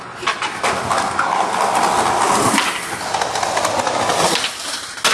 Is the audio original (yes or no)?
yes